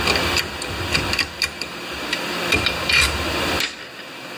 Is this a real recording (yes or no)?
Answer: yes